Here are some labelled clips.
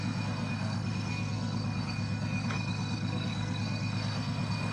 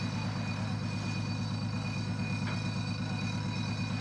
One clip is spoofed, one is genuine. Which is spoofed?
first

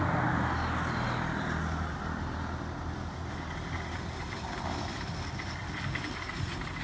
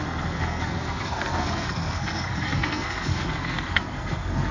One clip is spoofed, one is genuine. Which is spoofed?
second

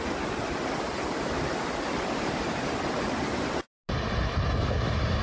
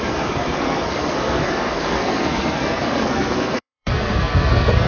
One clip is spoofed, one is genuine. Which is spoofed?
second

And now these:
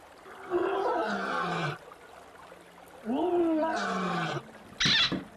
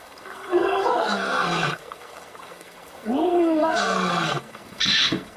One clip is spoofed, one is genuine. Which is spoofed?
second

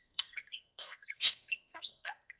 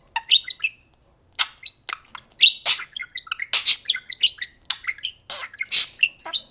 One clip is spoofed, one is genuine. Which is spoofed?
first